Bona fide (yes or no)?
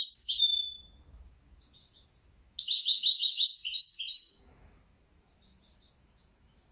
no